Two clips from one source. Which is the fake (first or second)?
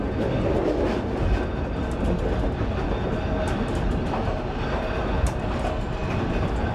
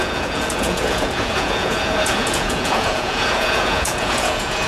second